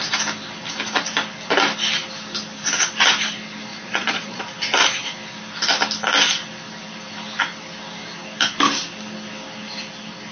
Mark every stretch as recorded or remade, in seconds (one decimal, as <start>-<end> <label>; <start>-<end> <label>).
0.0-3.7 recorded; 3.7-4.4 remade; 4.4-10.3 recorded